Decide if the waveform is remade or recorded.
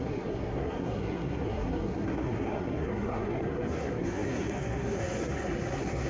remade